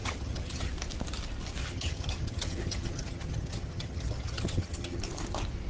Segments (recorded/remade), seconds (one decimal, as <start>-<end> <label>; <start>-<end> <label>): 0.0-0.7 remade; 0.7-1.6 recorded; 1.6-5.0 remade; 5.0-5.7 recorded